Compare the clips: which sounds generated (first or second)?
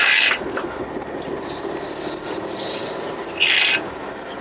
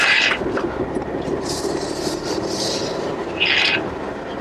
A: second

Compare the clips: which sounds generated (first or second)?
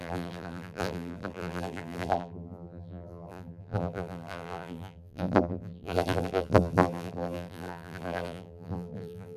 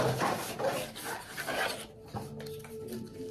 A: first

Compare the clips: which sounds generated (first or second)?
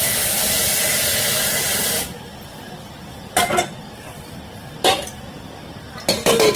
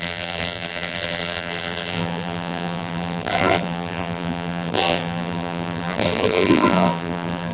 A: second